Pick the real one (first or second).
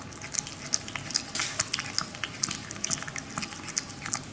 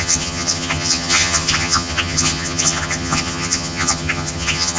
first